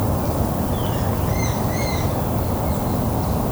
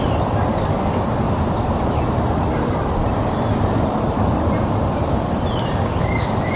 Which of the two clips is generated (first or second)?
second